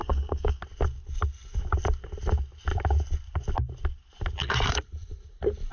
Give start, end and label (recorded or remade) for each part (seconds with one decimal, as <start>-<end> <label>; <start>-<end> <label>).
0.0-0.6 remade; 0.6-5.7 recorded